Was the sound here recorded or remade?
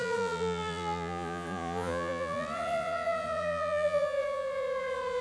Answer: remade